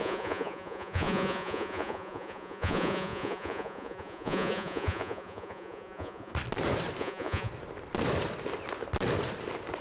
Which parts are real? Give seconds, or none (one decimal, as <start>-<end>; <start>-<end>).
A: 6.3-7.0; 7.5-9.8

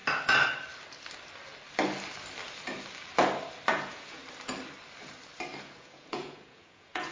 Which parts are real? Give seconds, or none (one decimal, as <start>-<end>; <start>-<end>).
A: 0.0-3.7; 4.2-5.6

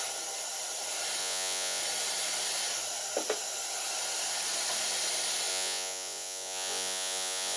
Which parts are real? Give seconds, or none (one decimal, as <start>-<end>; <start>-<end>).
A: 0.0-1.2; 1.8-5.5

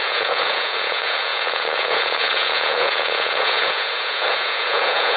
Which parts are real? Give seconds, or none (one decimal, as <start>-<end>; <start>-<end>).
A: none